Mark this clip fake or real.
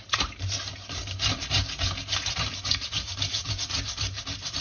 fake